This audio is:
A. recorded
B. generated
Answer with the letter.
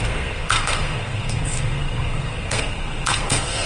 B